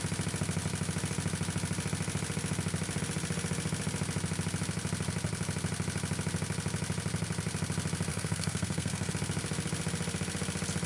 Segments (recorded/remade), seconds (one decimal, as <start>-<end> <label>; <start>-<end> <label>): 0.0-8.1 recorded; 8.1-9.1 remade; 9.1-10.9 recorded